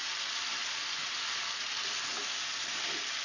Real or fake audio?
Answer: real